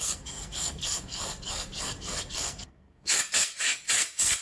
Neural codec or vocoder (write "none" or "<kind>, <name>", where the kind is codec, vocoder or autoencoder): codec, SNAC